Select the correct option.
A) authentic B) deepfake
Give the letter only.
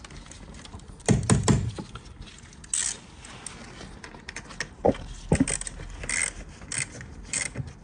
A